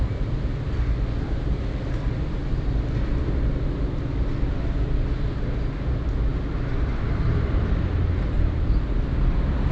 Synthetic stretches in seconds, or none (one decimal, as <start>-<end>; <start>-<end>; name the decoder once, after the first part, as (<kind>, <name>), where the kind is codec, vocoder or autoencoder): none

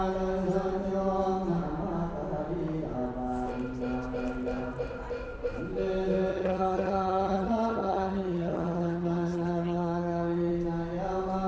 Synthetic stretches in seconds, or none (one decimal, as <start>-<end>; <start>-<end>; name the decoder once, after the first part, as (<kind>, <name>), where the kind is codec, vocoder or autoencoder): 6.3-10.5 (vocoder, HiFi-GAN)

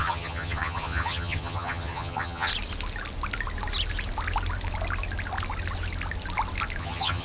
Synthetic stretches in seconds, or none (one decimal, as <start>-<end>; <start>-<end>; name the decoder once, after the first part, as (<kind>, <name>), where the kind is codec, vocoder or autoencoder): 0.0-2.5 (vocoder, HiFi-GAN); 6.8-7.2